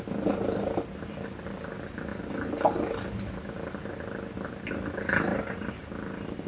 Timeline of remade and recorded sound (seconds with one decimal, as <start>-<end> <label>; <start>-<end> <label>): 0.0-5.3 recorded; 5.3-6.5 remade